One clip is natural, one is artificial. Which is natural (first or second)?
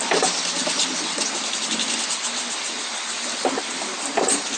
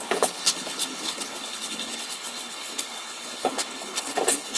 first